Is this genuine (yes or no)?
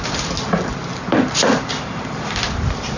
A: yes